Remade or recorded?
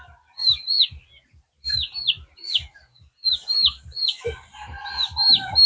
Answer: recorded